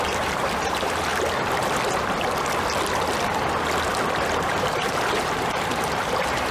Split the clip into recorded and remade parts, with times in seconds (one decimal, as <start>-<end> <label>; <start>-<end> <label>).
0.0-1.1 remade; 1.1-4.4 recorded; 4.4-6.5 remade